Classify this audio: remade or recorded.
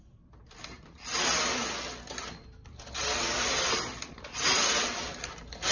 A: recorded